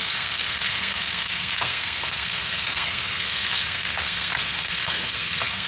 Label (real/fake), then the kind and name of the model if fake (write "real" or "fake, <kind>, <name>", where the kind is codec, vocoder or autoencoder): fake, codec, SNAC